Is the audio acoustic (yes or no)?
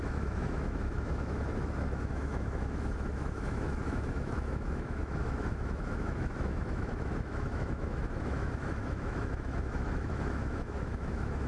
no